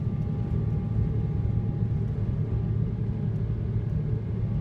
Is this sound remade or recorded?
recorded